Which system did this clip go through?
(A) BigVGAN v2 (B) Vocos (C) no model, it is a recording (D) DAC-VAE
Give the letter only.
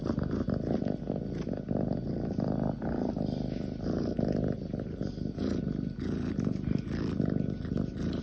C